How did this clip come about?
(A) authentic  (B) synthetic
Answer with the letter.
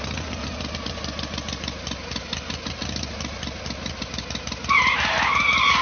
A